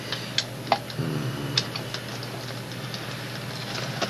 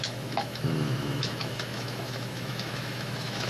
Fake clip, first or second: second